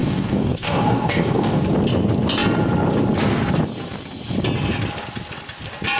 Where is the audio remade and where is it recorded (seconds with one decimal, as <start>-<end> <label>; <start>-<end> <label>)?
0.0-1.6 remade; 1.6-6.0 recorded